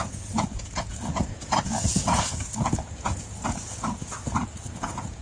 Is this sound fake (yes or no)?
yes